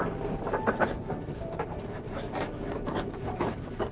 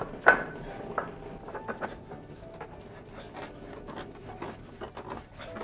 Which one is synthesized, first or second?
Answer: first